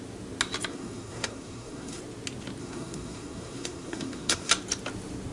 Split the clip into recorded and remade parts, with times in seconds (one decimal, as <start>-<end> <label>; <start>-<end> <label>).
0.0-0.7 recorded; 0.7-2.0 remade; 2.0-2.6 recorded; 2.6-4.5 remade; 4.5-5.3 recorded

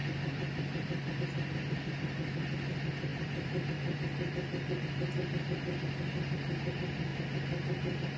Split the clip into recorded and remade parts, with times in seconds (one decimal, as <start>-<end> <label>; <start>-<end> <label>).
0.0-1.2 remade; 1.2-3.1 recorded; 3.1-4.8 remade; 4.8-8.2 recorded

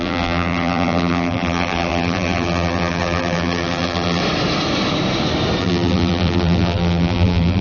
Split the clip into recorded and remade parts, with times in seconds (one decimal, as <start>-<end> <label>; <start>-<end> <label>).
0.0-4.2 remade; 4.2-5.6 recorded; 5.6-7.6 remade